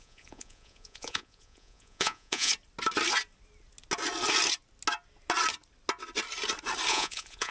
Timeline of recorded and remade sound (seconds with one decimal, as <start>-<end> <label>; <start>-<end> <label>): 0.0-2.5 remade; 2.5-6.9 recorded; 6.9-7.5 remade